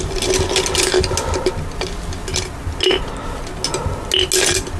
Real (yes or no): yes